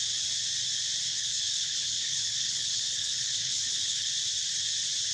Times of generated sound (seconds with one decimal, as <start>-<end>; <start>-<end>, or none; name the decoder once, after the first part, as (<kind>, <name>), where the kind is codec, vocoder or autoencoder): 1.1-4.1 (codec, HILCodec)